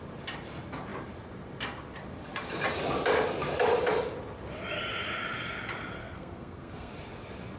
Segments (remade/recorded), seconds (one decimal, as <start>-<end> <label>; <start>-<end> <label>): 0.0-6.0 recorded; 6.0-6.9 remade; 6.9-7.6 recorded